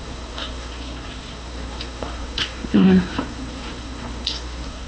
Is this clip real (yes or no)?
no